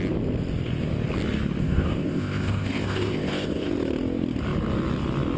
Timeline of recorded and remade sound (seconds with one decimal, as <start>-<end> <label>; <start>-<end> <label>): 0.0-1.6 recorded; 1.6-3.7 remade; 3.7-5.4 recorded